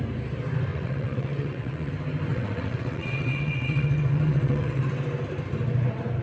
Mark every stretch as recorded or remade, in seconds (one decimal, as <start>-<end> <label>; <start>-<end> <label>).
0.0-0.7 recorded; 0.7-1.9 remade; 1.9-2.3 recorded; 2.3-4.8 remade; 4.8-6.2 recorded